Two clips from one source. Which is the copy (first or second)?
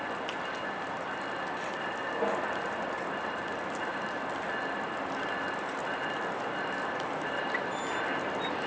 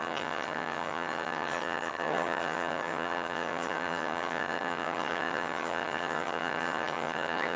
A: second